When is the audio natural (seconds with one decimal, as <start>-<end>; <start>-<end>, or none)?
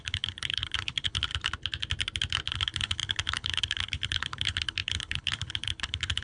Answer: 1.3-2.5